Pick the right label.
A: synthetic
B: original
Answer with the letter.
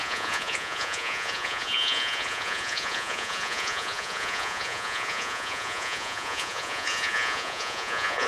A